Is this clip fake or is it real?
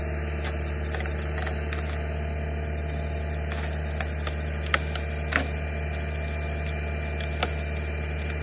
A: real